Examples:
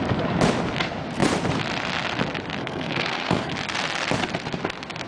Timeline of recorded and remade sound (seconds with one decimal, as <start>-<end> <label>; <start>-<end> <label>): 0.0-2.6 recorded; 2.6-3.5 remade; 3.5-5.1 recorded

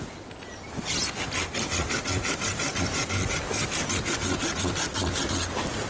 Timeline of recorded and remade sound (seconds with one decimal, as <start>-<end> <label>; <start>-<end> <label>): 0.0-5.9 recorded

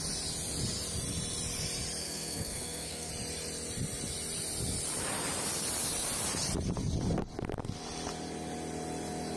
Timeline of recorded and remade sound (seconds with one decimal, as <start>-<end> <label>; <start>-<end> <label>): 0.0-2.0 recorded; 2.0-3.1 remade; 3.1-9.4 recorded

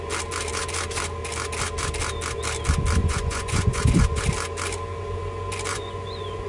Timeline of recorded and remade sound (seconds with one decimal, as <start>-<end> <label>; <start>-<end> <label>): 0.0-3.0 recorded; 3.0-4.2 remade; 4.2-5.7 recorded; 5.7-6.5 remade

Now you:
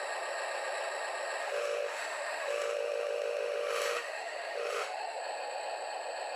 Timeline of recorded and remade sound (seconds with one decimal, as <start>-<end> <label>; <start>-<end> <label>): 0.0-1.4 recorded; 1.4-5.2 remade; 5.2-6.4 recorded